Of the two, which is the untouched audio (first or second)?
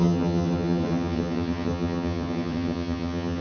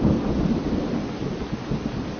second